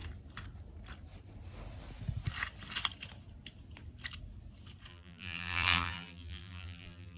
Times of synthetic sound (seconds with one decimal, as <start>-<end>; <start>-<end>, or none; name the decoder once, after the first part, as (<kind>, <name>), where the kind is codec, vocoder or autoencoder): 4.9-7.2 (vocoder, BigVGAN v2)

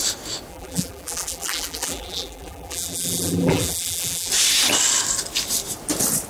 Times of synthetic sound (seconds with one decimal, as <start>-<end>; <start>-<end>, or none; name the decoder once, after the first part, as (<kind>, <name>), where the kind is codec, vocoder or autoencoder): 0.5-4.3 (vocoder, BigVGAN v2)

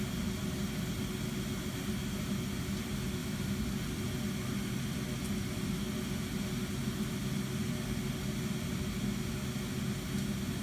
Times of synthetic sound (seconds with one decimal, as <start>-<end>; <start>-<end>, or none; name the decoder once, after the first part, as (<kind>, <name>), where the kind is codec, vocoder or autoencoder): none

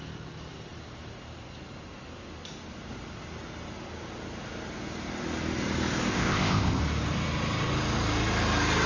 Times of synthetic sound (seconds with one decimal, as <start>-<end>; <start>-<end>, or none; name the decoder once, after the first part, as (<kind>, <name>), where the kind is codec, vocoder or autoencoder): 6.1-6.8 (codec, ZipCodec)

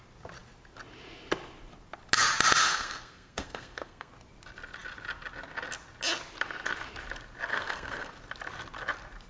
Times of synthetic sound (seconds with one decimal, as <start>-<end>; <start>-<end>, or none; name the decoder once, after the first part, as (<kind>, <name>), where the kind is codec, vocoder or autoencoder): 2.6-4.1 (codec, SNAC); 7.5-8.1

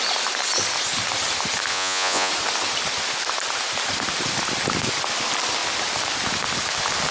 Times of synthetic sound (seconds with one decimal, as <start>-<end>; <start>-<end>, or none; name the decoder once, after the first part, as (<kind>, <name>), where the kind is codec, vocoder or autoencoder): 1.7-2.3 (vocoder, Vocos)

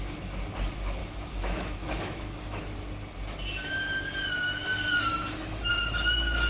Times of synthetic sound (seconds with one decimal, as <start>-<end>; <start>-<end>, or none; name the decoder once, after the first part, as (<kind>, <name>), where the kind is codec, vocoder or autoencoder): 1.0-2.6 (autoencoder, DAC-VAE); 5.1-5.7

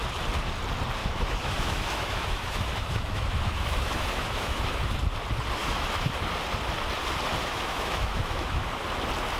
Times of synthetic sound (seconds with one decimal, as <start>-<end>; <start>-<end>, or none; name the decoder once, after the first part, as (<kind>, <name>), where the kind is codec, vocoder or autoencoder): 1.0-4.8 (autoencoder, DAC-VAE); 5.6-6.2; 7.4-8.7